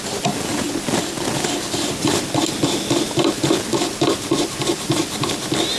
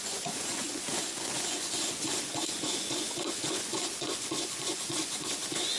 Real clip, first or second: first